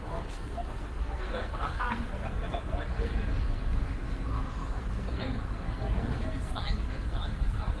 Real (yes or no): no